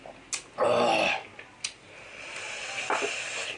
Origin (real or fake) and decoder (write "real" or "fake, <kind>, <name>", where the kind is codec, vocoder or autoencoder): real